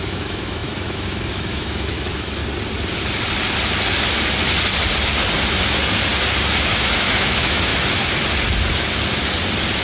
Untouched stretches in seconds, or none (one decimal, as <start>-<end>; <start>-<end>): 2.4-6.6; 7.7-9.8

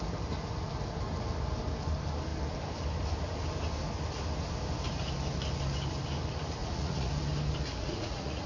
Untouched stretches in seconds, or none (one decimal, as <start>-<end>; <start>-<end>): 0.0-6.6; 7.1-7.8

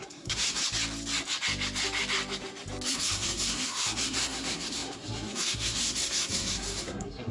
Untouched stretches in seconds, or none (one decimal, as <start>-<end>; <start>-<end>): 0.6-2.9

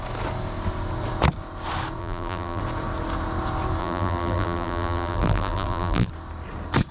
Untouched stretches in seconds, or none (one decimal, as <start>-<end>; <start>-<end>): 0.0-2.0; 2.6-3.8; 6.1-6.9

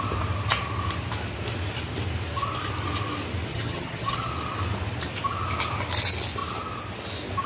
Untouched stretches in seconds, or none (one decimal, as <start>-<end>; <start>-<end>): 0.0-3.5; 4.3-7.5

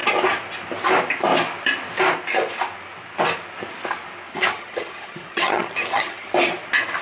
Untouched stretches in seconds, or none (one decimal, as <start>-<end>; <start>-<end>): 0.0-4.3; 6.3-7.0

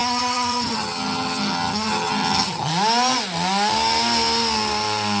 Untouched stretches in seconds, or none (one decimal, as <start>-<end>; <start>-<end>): 2.7-5.2

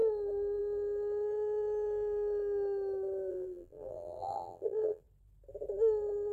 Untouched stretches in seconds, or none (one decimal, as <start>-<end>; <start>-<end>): 0.0-3.3; 5.0-6.3